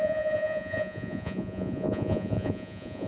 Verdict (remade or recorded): remade